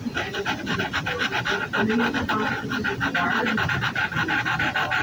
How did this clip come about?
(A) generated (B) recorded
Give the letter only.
B